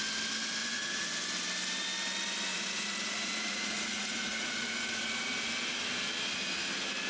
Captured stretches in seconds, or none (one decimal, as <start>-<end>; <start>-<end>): 0.0-0.6; 1.1-2.5; 5.5-7.1